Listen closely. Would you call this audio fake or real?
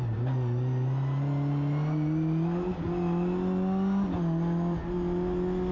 real